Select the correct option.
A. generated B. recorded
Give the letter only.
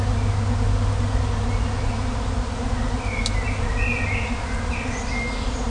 B